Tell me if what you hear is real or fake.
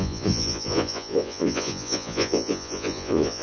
fake